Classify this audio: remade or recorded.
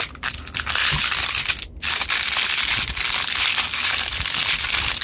remade